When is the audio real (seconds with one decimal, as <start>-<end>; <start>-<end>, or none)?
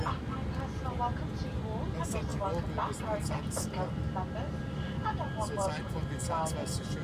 0.0-7.0